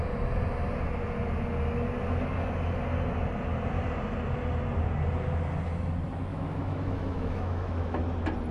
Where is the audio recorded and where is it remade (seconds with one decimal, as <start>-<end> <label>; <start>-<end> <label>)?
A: 0.0-6.3 recorded; 6.3-8.0 remade; 8.0-8.5 recorded